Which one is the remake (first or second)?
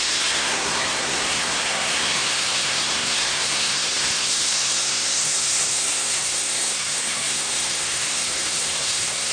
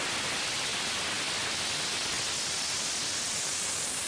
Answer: first